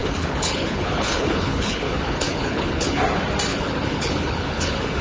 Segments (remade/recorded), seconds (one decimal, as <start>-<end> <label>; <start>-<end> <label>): 0.0-3.0 remade; 3.0-3.5 recorded; 3.5-5.0 remade

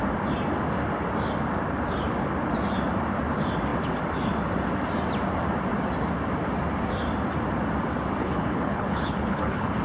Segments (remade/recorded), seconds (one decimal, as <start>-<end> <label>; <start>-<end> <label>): 0.0-8.2 recorded; 8.2-9.8 remade

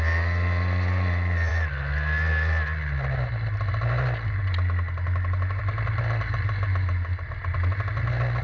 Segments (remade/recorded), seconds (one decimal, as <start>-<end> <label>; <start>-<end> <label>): 0.0-8.4 recorded